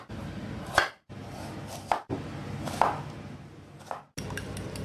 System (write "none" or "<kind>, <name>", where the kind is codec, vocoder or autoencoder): none